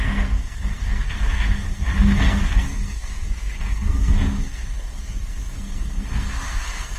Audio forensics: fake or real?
fake